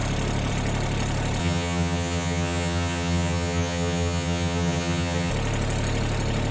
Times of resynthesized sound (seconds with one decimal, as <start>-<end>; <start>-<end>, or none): 1.4-5.3